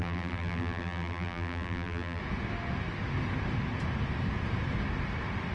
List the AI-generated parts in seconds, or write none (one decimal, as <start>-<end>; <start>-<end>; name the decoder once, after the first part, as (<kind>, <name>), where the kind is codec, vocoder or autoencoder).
0.0-2.2 (vocoder, BigVGAN v2)